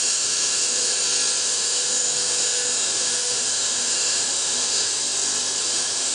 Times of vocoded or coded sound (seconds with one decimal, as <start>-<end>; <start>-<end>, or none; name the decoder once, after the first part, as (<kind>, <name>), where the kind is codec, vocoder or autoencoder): 0.0-0.9 (autoencoder, DAC-VAE); 1.4-5.0; 5.6-6.1